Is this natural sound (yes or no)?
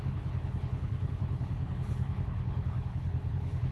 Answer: no